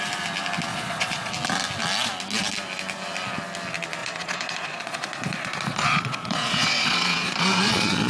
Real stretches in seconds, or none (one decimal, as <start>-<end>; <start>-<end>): 0.0-0.7; 1.3-4.0